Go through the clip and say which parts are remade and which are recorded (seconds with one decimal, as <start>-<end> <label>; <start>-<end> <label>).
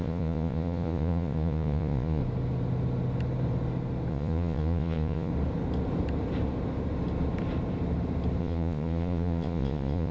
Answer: 0.0-2.2 remade; 2.2-4.1 recorded; 4.1-5.3 remade; 5.3-8.4 recorded; 8.4-10.1 remade